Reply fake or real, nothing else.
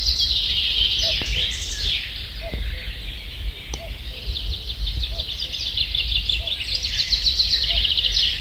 real